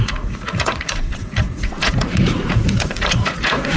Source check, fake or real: fake